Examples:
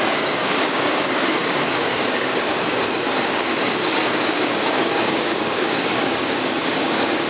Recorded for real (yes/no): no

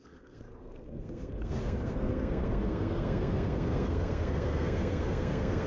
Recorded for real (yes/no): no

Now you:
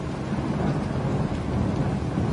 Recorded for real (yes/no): yes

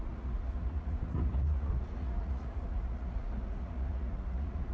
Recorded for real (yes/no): no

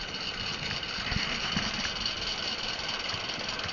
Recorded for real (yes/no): yes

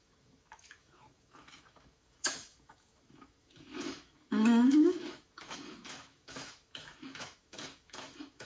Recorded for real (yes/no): no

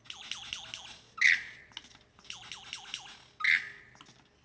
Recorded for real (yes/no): yes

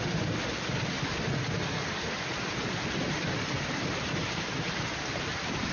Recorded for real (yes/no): no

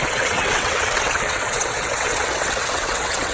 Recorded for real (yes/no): no